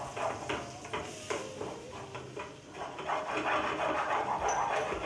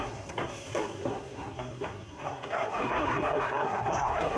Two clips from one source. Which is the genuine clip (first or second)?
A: first